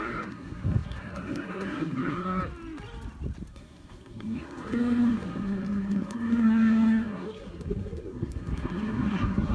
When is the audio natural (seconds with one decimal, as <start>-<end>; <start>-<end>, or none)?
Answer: 2.4-3.5